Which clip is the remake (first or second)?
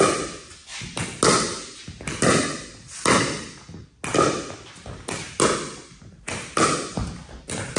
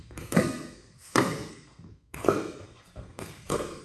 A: second